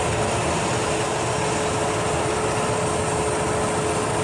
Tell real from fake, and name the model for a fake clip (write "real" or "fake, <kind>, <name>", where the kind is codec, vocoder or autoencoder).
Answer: real